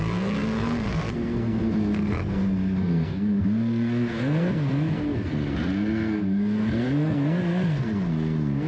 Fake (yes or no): yes